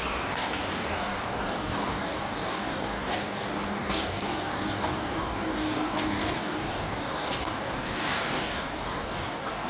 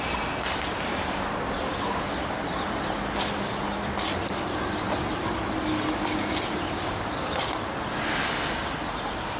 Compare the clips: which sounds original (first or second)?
second